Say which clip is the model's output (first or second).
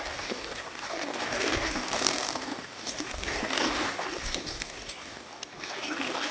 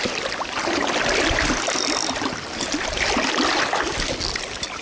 first